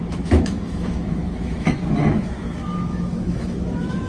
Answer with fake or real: fake